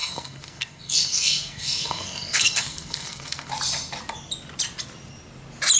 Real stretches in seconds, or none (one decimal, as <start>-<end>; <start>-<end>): 3.5-5.8